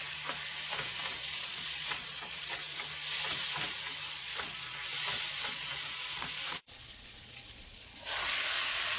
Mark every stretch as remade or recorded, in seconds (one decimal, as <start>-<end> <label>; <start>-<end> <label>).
0.0-1.2 recorded; 1.2-2.6 remade; 2.6-4.2 recorded; 4.2-8.1 remade; 8.1-9.0 recorded

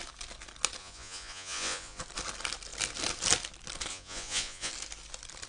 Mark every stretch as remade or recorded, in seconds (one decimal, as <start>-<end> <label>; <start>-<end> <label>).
0.0-0.8 recorded; 0.8-2.0 remade; 2.0-3.9 recorded; 3.9-4.7 remade; 4.7-5.5 recorded

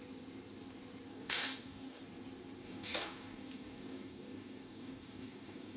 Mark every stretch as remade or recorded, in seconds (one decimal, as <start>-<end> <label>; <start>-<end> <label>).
0.0-1.1 recorded; 1.1-2.0 remade; 2.0-2.6 recorded; 2.6-5.8 remade

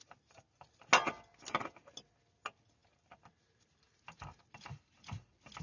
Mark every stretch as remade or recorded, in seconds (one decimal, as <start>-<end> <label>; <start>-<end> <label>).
0.0-5.6 recorded